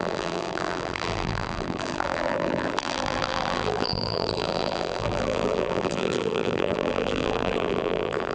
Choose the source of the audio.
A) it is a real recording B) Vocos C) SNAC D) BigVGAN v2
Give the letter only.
D